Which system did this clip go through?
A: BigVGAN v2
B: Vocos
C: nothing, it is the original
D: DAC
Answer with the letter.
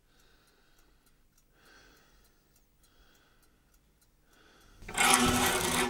C